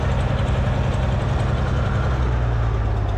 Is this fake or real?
real